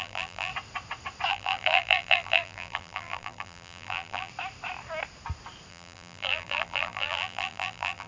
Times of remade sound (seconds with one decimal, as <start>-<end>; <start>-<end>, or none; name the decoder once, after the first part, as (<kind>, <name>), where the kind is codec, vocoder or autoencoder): 0.0-0.5 (vocoder, BigVGAN v2); 1.3-4.3; 5.7-8.1